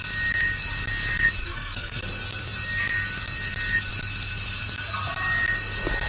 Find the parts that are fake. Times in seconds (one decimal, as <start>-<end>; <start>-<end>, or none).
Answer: 1.4-2.0